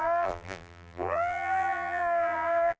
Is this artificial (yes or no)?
yes